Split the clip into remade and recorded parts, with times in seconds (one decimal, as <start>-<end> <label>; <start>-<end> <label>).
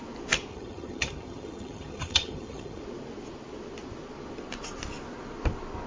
0.0-0.5 recorded; 0.5-2.8 remade; 2.8-5.9 recorded